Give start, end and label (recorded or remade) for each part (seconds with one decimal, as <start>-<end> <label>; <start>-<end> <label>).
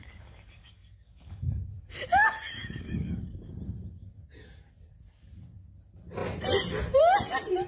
0.0-1.5 remade; 1.5-2.6 recorded; 2.6-3.5 remade; 3.5-7.7 recorded